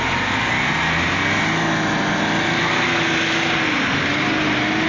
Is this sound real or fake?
real